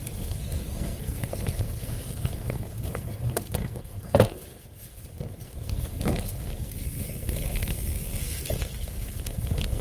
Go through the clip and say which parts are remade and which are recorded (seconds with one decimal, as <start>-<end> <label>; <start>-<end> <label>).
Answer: 0.0-9.8 remade